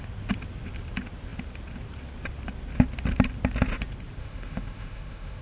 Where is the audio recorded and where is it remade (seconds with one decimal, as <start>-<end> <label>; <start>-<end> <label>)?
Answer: 0.0-4.2 recorded; 4.2-5.4 remade